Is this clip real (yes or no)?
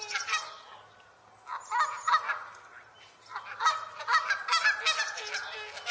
yes